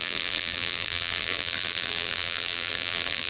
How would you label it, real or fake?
fake